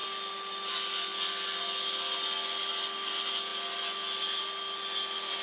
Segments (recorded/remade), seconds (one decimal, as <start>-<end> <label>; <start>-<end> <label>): 0.0-5.4 recorded